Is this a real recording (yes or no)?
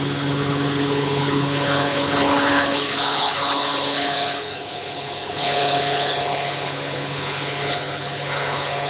no